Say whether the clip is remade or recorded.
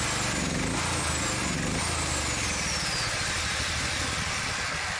recorded